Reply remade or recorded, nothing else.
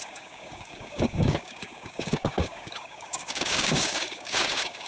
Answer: remade